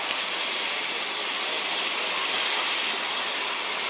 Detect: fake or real real